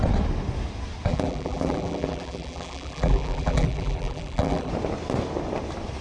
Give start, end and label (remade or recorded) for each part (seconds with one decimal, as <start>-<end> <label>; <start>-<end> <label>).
0.0-1.1 recorded; 1.1-4.7 remade; 4.7-6.0 recorded